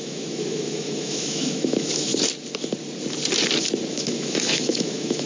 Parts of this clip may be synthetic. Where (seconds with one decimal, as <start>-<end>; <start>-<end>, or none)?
0.0-2.1; 3.9-5.3